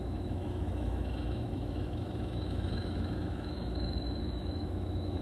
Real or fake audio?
fake